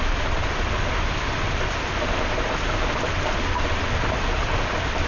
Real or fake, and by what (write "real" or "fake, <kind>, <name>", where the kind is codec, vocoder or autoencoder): real